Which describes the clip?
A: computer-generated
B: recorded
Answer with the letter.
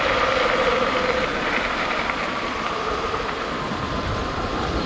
A